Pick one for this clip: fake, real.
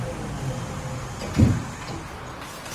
real